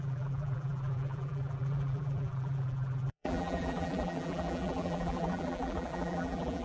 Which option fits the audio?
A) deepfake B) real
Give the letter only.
A